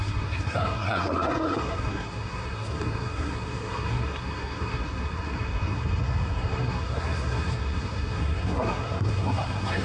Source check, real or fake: fake